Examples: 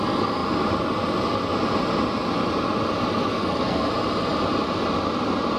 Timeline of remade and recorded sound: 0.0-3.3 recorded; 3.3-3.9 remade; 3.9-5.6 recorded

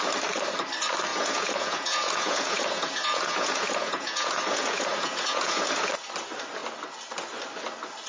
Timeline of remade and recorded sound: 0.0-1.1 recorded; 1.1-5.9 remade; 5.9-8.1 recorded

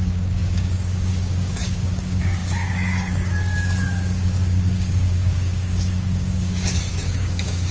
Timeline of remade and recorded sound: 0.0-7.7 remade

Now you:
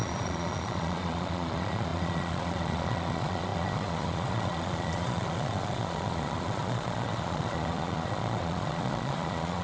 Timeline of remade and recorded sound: 0.0-9.6 remade

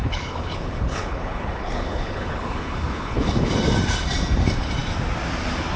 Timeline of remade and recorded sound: 0.0-3.5 remade; 3.5-5.8 recorded

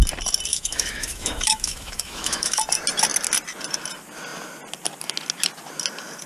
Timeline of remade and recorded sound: 0.0-0.5 recorded; 0.5-2.6 remade; 2.6-6.3 recorded